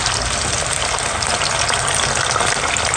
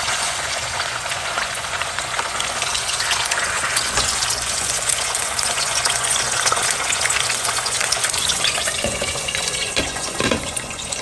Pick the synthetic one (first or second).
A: second